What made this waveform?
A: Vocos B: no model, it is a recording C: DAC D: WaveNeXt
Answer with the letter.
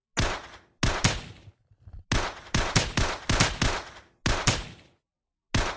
B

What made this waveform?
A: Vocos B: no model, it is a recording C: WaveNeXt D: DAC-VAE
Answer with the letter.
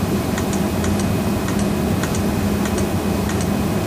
B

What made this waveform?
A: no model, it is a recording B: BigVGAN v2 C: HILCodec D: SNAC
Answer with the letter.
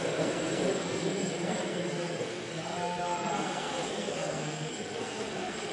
D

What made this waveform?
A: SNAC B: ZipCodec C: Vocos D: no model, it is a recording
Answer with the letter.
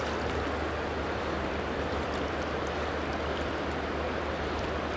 D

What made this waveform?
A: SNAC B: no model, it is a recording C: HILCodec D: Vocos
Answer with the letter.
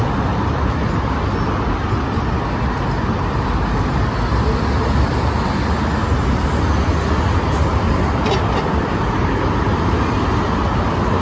B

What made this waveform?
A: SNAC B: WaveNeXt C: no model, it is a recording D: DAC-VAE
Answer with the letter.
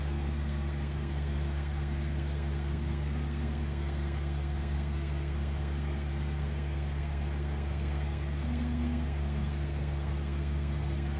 A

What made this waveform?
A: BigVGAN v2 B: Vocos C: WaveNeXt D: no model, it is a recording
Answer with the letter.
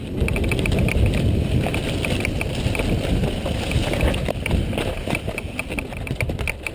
D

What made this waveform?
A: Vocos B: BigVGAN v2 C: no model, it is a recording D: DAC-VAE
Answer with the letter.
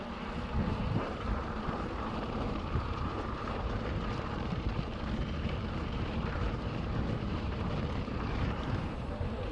B